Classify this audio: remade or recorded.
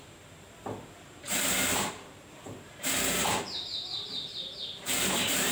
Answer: remade